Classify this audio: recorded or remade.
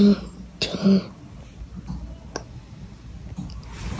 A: recorded